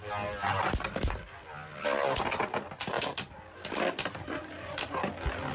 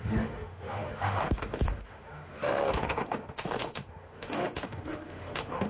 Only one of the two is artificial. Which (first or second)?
second